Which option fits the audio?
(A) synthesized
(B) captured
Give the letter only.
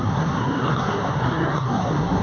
A